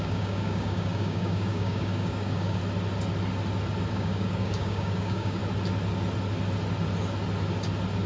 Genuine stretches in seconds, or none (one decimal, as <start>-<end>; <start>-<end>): 2.6-3.9; 5.4-8.1